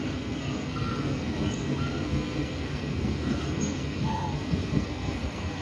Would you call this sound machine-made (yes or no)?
yes